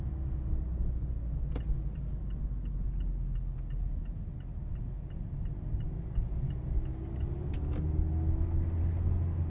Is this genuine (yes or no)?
yes